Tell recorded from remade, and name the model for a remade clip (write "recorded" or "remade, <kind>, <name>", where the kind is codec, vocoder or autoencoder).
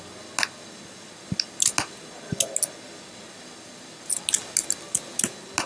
recorded